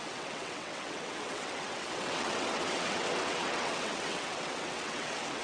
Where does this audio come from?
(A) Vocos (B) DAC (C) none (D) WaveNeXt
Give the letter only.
D